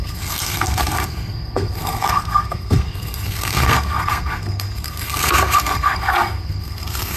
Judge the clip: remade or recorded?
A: remade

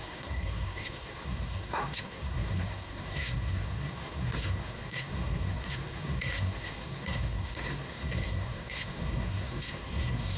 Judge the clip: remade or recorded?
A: remade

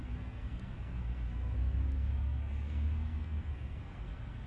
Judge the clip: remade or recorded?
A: remade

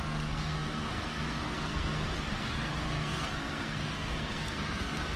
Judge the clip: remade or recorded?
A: remade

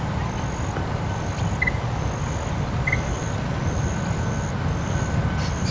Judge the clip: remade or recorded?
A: recorded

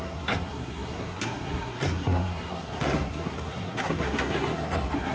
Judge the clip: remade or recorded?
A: remade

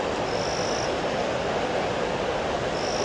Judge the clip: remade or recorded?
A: recorded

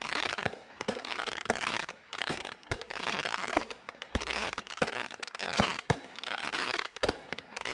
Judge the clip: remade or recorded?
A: remade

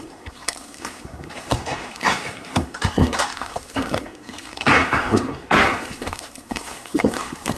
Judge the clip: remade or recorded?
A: remade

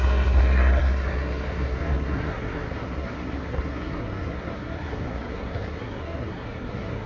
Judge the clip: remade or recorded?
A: remade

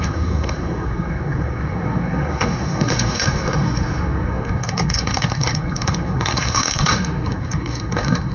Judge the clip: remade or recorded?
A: remade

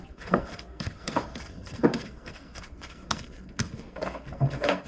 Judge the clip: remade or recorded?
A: remade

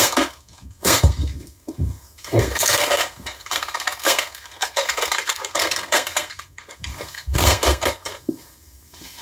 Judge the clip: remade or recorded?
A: remade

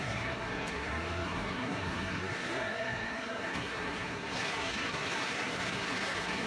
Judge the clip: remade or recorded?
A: remade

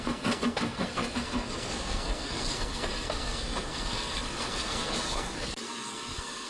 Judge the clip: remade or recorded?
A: remade